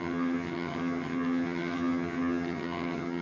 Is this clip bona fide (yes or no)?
no